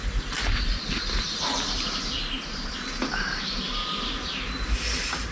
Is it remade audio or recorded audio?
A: recorded